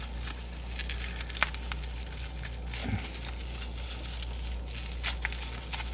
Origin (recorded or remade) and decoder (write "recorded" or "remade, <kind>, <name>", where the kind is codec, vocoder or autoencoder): recorded